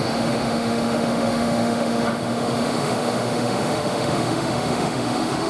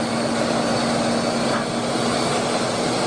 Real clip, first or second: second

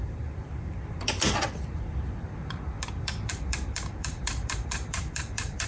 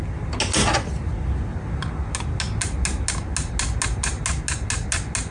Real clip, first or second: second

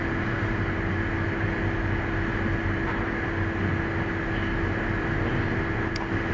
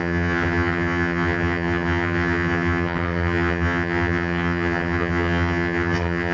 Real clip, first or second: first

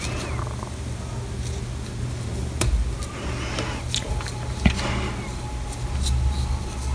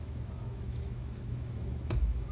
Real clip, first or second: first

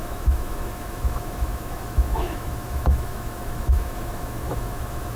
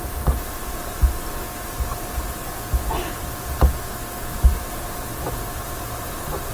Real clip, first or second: second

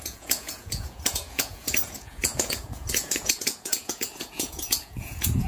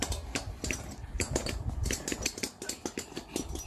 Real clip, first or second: second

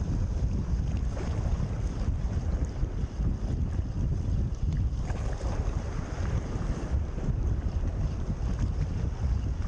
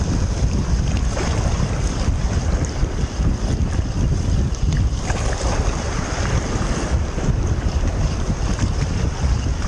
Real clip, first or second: first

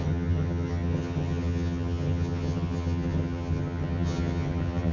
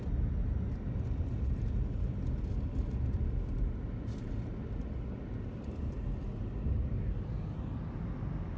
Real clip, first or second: second